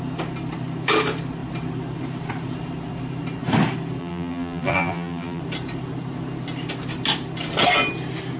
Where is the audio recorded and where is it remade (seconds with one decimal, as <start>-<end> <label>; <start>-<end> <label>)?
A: 0.0-4.0 recorded; 4.0-5.4 remade; 5.4-8.4 recorded